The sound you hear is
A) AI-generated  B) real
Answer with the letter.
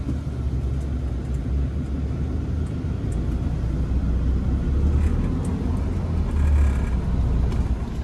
B